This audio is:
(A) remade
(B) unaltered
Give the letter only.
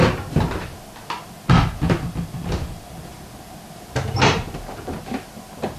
B